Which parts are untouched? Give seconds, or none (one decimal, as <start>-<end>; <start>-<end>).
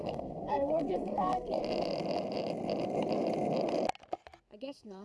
1.6-4.6